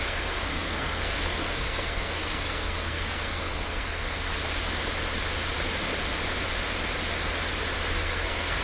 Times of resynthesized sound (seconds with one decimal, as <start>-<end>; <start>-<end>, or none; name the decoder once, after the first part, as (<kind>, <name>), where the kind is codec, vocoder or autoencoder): 0.0-4.4 (codec, SNAC); 7.9-8.6